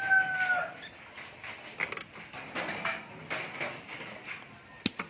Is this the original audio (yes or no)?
yes